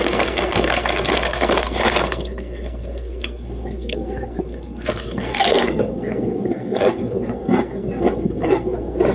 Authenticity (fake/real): fake